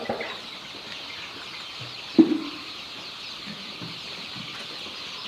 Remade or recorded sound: recorded